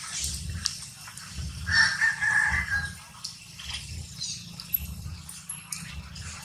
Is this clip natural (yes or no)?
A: yes